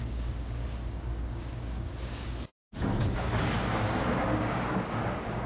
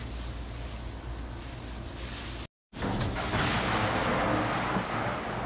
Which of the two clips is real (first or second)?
second